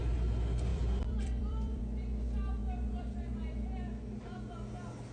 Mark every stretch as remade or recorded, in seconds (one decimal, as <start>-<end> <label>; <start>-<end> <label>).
0.0-0.7 recorded; 0.7-1.8 remade; 1.8-2.6 recorded; 2.6-3.2 remade; 3.2-5.1 recorded